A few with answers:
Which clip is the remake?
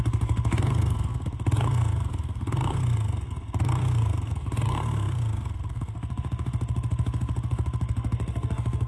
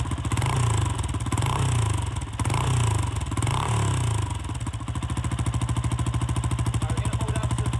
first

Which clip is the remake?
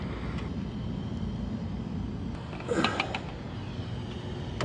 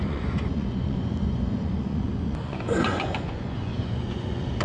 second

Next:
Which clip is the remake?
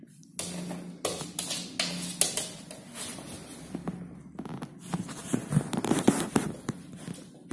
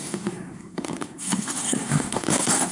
second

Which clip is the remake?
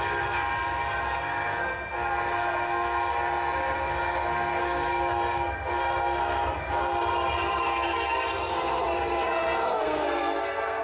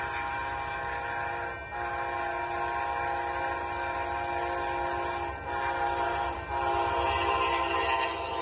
first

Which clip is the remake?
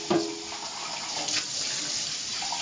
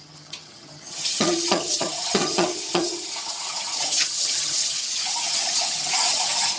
second